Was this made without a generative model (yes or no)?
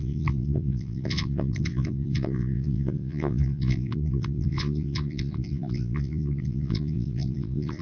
no